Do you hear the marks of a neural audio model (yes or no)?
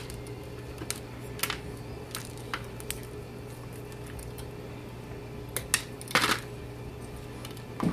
no